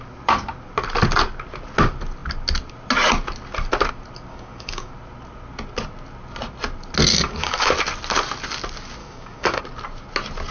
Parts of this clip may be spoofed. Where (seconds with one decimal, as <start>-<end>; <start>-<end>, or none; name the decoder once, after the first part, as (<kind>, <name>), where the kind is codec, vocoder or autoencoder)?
4.3-4.9 (codec, DAC); 7.1-7.7; 9.0-9.6